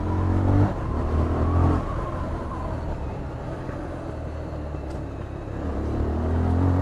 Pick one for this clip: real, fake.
real